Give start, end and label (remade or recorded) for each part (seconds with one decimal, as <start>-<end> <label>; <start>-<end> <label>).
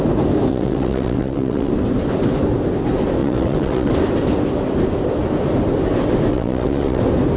0.0-0.5 recorded; 0.5-1.7 remade; 1.7-3.2 recorded; 3.2-3.9 remade; 3.9-6.3 recorded; 6.3-7.0 remade; 7.0-7.4 recorded